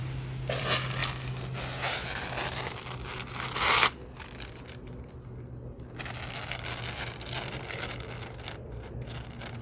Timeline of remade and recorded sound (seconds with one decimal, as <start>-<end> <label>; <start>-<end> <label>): 0.0-9.6 recorded